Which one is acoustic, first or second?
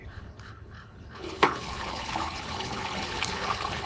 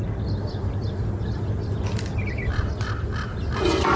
second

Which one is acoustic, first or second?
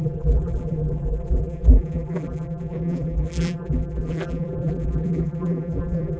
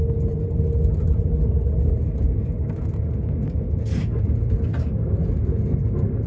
second